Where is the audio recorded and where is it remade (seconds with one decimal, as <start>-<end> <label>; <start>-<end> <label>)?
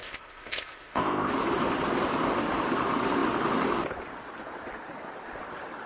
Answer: 0.0-1.3 remade; 1.3-5.9 recorded